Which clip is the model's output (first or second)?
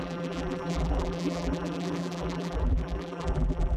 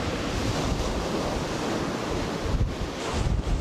first